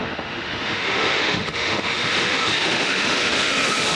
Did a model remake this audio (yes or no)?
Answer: yes